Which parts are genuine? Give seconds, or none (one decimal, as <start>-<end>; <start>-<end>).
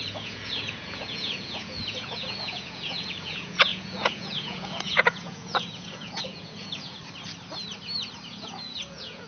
7.0-8.3